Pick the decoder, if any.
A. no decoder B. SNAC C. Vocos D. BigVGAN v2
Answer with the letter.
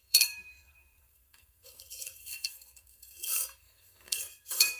B